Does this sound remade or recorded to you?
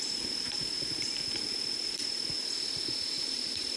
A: recorded